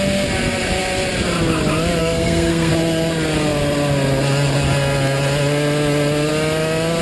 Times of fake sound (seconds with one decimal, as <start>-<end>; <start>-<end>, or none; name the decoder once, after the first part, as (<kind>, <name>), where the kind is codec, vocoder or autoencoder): 2.0-2.7 (codec, SNAC)